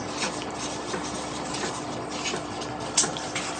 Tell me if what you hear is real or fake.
real